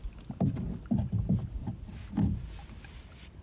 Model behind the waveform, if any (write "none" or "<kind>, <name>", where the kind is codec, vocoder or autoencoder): none